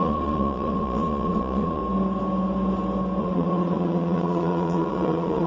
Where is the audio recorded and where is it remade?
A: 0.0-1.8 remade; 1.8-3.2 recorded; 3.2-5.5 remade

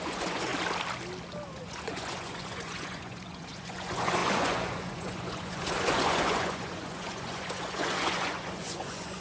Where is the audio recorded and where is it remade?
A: 0.0-0.5 remade; 0.5-1.5 recorded; 1.5-9.2 remade

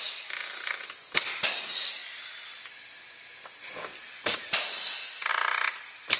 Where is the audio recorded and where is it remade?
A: 0.0-6.2 recorded

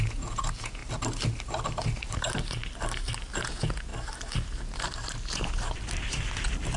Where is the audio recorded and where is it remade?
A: 0.0-0.8 remade; 0.8-3.4 recorded; 3.4-3.9 remade; 3.9-6.8 recorded

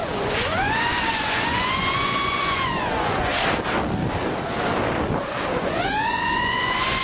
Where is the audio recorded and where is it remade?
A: 0.0-3.3 remade; 3.3-5.6 recorded; 5.6-7.0 remade

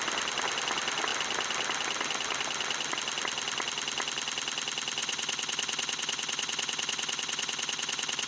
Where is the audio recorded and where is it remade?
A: 0.0-5.0 recorded; 5.0-8.3 remade